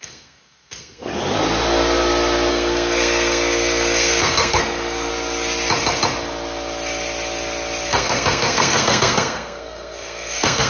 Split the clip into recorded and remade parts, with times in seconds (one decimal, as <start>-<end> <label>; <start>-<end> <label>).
0.0-1.1 remade; 1.1-2.5 recorded; 2.5-5.1 remade; 5.1-7.9 recorded; 7.9-10.7 remade